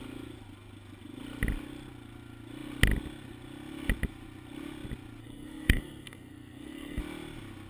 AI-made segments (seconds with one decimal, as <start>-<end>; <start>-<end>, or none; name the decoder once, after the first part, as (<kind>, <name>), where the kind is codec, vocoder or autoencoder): 5.2-7.0 (codec, SNAC)